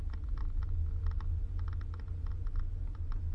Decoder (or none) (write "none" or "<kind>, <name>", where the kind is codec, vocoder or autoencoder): none